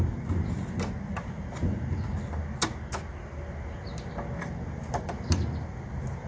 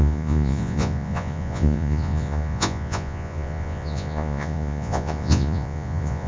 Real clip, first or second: first